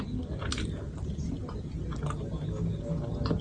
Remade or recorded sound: recorded